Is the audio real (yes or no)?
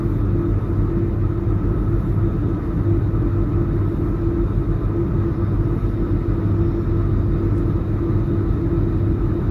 yes